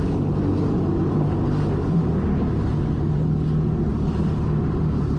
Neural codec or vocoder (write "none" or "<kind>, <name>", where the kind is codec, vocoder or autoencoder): none